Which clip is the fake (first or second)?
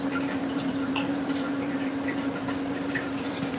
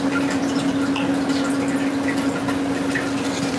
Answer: first